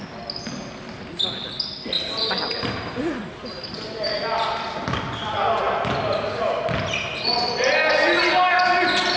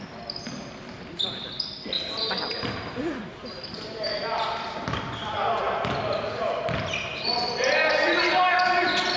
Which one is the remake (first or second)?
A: second